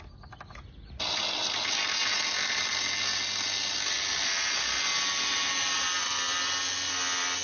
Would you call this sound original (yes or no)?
yes